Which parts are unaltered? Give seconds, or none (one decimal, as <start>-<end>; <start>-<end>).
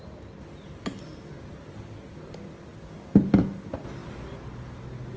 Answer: 0.0-5.2